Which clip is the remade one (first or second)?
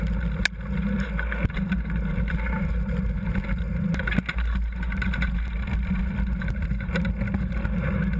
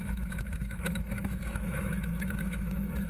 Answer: second